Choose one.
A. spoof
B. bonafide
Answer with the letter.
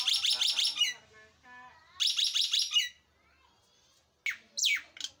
B